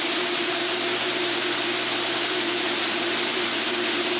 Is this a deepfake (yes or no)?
yes